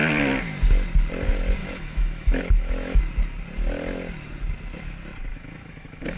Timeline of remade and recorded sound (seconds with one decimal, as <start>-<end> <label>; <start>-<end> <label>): 0.0-1.6 recorded; 1.6-3.0 remade; 3.0-5.3 recorded; 5.3-6.2 remade